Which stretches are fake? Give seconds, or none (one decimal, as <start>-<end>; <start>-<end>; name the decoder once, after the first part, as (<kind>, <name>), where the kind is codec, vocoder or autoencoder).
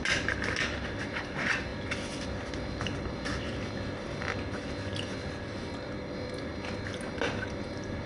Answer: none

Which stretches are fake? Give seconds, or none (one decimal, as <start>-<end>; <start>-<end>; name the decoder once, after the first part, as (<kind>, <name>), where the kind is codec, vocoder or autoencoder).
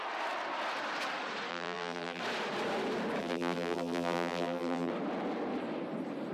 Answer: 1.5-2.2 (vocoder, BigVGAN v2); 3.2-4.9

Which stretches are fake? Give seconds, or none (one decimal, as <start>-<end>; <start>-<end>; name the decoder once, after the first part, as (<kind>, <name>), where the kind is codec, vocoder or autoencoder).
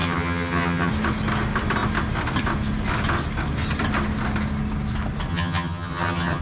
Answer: 0.0-0.9 (vocoder, HiFi-GAN); 5.3-6.4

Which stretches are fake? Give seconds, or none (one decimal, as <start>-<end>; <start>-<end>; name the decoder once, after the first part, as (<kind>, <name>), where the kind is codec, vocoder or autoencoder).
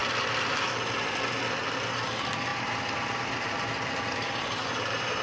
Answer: 2.5-5.2 (vocoder, BigVGAN v2)